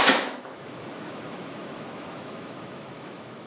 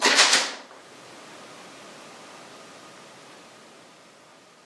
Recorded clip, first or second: second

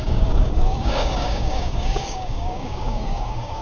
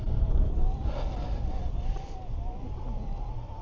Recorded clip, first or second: second